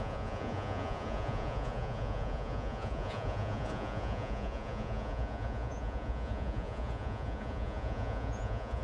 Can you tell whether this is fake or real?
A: fake